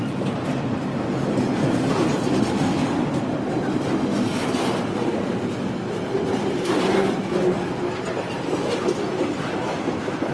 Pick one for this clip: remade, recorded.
recorded